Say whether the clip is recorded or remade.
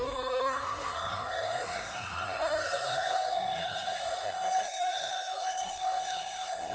remade